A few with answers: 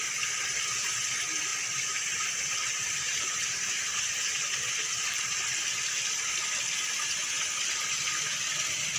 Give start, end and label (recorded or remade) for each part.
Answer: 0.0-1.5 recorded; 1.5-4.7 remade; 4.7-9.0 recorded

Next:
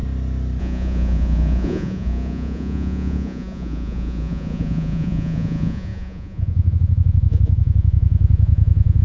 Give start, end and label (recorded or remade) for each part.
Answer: 0.0-0.6 recorded; 0.6-9.0 remade

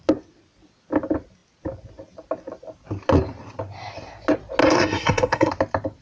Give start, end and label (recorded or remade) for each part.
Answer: 0.0-4.6 recorded; 4.6-5.5 remade; 5.5-6.0 recorded

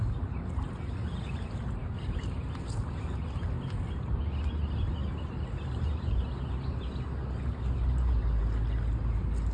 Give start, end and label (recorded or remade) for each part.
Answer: 0.0-9.5 recorded

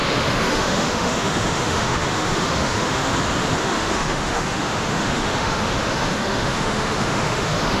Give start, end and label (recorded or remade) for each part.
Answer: 0.0-3.1 remade; 3.1-3.6 recorded; 3.6-7.8 remade

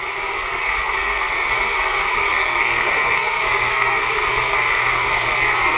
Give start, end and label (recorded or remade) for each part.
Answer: 0.0-5.8 remade

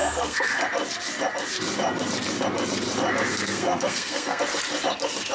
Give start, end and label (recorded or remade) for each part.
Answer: 0.0-0.6 remade; 0.6-3.3 recorded; 3.3-4.4 remade; 4.4-5.3 recorded

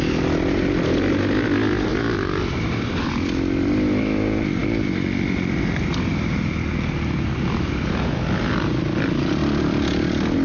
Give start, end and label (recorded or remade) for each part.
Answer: 0.0-1.9 recorded; 1.9-3.1 remade; 3.1-10.4 recorded